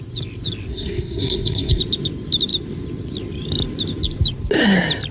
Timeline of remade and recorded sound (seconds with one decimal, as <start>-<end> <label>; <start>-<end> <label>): 0.0-0.7 recorded; 0.7-1.8 remade; 1.8-5.1 recorded